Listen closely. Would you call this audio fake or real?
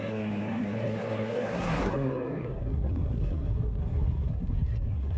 fake